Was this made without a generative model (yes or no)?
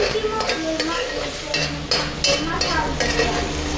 yes